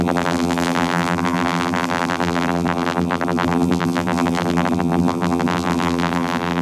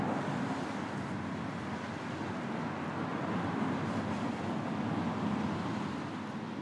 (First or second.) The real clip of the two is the second